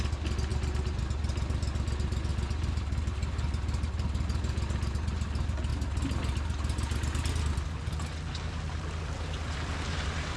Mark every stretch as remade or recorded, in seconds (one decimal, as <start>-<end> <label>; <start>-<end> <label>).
0.0-10.4 recorded